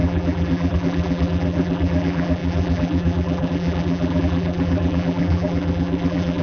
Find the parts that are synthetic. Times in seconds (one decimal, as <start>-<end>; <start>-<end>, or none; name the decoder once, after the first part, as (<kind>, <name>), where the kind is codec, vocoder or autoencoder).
0.0-6.4 (vocoder, BigVGAN v2)